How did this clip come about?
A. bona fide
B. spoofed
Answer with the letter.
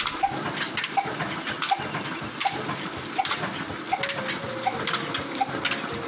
A